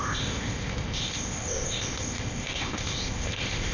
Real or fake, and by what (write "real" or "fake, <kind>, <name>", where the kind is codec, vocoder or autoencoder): fake, codec, ZipCodec